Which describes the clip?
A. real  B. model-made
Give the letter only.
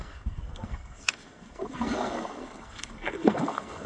B